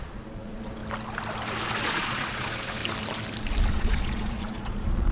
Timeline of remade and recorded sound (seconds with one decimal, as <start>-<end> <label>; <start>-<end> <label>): 0.0-0.8 remade; 0.8-1.9 recorded; 1.9-2.8 remade; 2.8-3.7 recorded; 3.7-5.1 remade